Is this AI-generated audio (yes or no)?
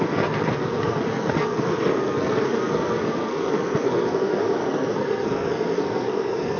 yes